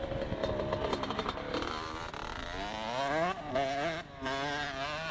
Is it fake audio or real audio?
real